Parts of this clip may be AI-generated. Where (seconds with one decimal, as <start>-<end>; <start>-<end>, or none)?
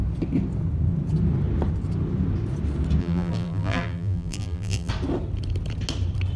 3.0-4.9